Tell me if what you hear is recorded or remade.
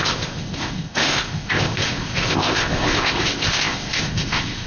remade